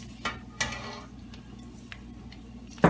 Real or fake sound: real